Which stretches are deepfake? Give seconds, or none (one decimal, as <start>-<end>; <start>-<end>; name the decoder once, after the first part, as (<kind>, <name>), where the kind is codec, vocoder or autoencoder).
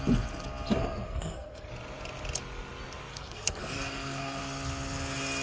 0.8-1.7 (codec, SNAC); 3.1-4.4